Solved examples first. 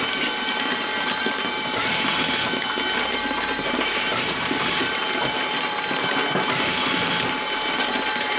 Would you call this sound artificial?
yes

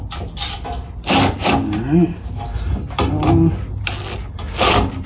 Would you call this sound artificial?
no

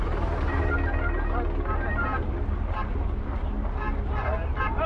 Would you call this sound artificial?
no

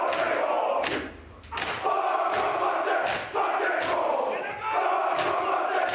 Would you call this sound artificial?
no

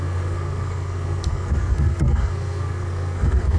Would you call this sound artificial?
yes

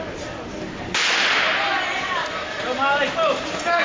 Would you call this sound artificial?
no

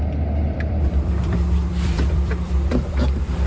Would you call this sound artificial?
yes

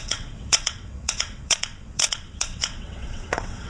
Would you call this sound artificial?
yes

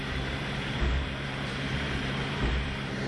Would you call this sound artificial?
yes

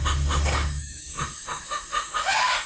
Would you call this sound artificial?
yes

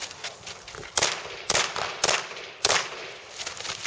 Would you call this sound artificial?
yes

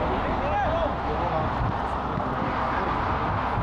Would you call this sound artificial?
no